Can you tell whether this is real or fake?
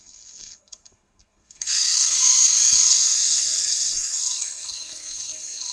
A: fake